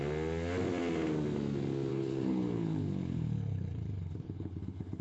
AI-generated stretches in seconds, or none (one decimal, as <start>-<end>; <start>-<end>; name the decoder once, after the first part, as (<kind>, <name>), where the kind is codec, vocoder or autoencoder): 1.9-5.0 (codec, HILCodec)